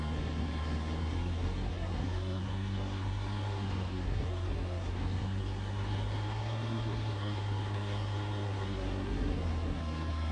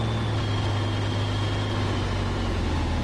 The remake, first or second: first